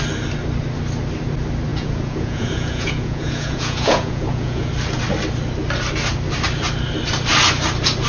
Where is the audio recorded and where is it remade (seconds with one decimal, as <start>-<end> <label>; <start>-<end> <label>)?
0.0-1.7 recorded; 1.7-4.7 remade; 4.7-8.1 recorded